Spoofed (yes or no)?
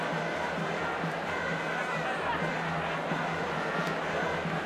no